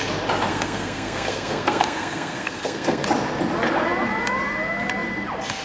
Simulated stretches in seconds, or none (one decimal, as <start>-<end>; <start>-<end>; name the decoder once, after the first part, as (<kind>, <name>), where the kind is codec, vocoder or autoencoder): 0.5-3.0 (codec, SNAC)